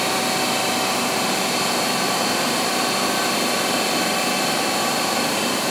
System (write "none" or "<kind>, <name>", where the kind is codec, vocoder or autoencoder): vocoder, BigVGAN v2